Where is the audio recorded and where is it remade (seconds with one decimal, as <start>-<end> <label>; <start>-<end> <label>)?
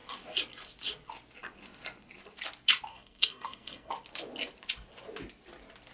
0.0-2.9 recorded; 2.9-3.9 remade; 3.9-5.9 recorded